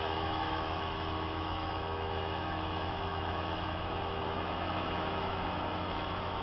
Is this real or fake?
fake